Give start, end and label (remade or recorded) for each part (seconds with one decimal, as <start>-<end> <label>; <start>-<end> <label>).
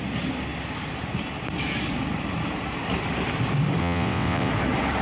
0.0-3.8 recorded; 3.8-4.5 remade; 4.5-5.0 recorded